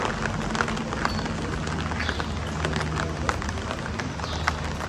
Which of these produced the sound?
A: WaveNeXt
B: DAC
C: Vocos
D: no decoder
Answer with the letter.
D